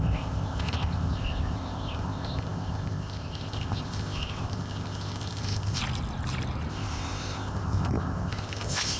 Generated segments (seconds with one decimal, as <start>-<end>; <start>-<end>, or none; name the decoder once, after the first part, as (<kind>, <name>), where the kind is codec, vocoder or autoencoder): 0.0-5.8 (codec, ZipCodec); 6.7-9.0